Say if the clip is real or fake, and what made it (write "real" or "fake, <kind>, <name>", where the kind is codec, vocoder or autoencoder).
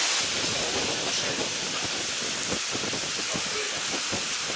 real